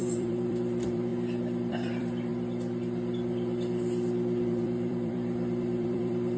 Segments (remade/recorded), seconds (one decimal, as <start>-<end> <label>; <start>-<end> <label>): 0.0-1.1 remade; 1.1-1.7 recorded; 1.7-2.3 remade; 2.3-4.4 recorded; 4.4-6.4 remade